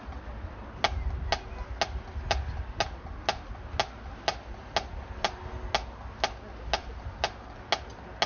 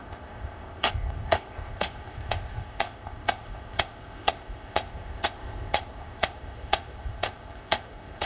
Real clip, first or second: first